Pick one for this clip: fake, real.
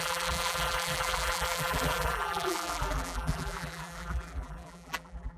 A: fake